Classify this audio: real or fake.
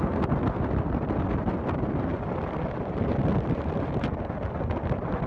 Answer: real